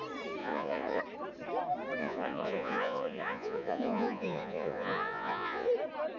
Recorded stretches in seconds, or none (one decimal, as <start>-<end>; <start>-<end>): 0.0-0.4; 1.0-2.0; 5.7-6.2